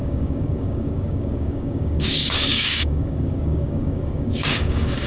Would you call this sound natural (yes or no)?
no